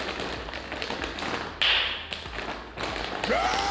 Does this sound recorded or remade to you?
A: recorded